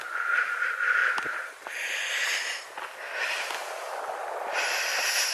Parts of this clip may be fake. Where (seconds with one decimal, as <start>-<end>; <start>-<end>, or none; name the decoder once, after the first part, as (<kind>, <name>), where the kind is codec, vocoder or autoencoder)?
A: none